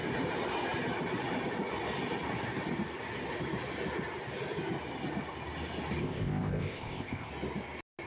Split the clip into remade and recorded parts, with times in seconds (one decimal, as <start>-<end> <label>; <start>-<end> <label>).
0.0-6.0 recorded; 6.0-7.3 remade; 7.3-8.1 recorded